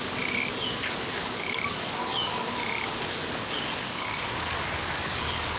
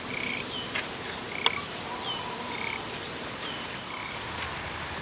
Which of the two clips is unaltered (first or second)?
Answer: second